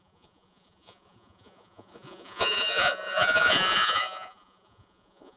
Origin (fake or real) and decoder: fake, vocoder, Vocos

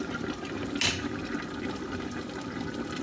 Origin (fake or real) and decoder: real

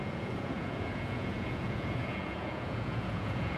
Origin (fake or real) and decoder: fake, vocoder, Vocos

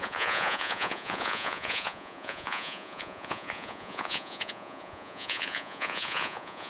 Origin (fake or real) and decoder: fake, vocoder, Vocos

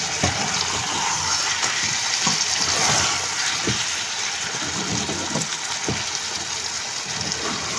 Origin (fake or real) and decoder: real